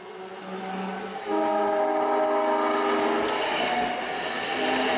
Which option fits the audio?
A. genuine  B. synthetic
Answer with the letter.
A